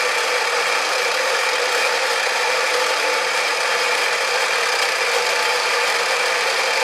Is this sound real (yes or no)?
yes